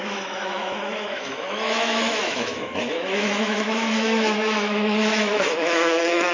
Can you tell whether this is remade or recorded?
remade